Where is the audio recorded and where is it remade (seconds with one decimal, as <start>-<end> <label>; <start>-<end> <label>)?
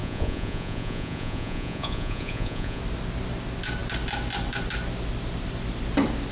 0.0-2.8 remade; 2.8-6.3 recorded